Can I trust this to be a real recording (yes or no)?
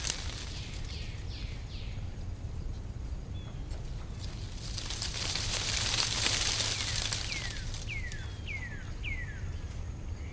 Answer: yes